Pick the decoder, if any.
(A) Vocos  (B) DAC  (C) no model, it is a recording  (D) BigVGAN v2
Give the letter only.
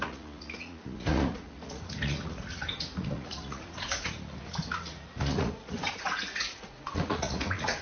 A